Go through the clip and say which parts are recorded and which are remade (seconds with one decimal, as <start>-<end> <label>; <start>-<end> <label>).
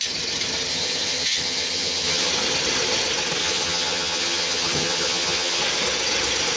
0.0-0.7 recorded; 0.7-2.3 remade; 2.3-3.4 recorded; 3.4-5.6 remade; 5.6-6.6 recorded